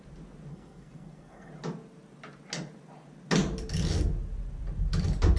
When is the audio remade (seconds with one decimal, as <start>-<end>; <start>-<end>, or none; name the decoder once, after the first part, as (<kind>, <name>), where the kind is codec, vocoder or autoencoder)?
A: 0.5-1.5 (codec, SNAC)